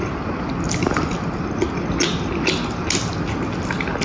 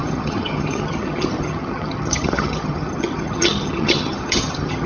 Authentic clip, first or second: first